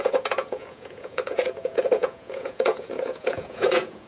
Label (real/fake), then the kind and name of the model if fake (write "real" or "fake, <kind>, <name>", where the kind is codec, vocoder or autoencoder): fake, vocoder, Vocos